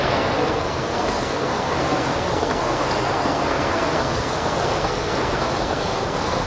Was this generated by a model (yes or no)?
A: yes